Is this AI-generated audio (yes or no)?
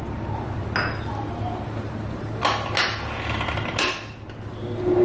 no